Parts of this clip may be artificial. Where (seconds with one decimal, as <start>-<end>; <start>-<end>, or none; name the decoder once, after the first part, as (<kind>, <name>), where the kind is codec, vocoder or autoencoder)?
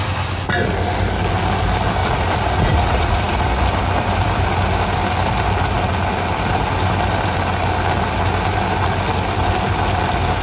2.0-3.5 (vocoder, Vocos)